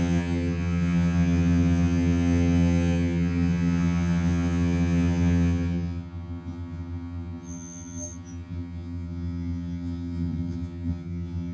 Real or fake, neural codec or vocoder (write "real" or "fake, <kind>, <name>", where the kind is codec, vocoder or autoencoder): fake, vocoder, HiFi-GAN